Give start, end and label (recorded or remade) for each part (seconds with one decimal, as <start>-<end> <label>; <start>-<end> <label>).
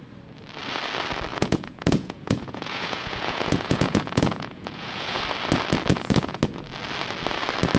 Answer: 0.0-1.3 recorded; 1.3-5.2 remade; 5.2-5.9 recorded; 5.9-6.4 remade; 6.4-7.8 recorded